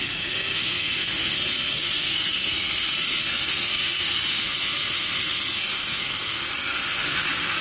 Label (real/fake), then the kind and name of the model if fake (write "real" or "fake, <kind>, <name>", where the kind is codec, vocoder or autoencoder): fake, codec, SNAC